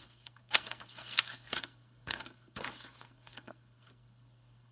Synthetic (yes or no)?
yes